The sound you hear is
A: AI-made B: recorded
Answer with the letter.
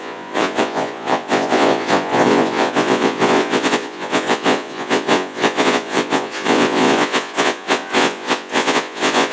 A